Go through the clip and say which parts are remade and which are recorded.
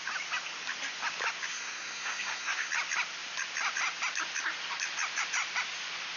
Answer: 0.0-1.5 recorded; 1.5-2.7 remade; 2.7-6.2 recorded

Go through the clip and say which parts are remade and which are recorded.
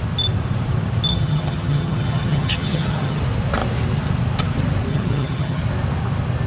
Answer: 0.0-1.1 recorded; 1.1-3.2 remade; 3.2-4.9 recorded; 4.9-5.6 remade; 5.6-6.5 recorded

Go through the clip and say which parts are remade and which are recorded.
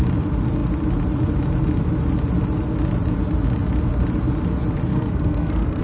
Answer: 0.0-4.9 recorded; 4.9-5.8 remade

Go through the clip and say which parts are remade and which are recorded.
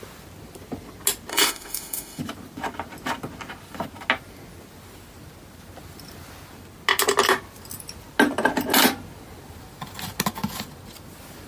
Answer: 0.0-1.3 recorded; 1.3-2.2 remade; 2.2-11.5 recorded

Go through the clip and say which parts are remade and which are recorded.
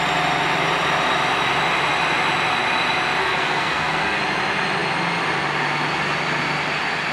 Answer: 0.0-3.2 recorded; 3.2-4.2 remade; 4.2-7.1 recorded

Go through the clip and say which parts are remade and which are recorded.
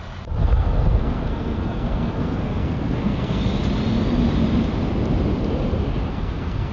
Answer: 0.0-0.4 recorded; 0.4-3.4 remade; 3.4-6.1 recorded; 6.1-6.7 remade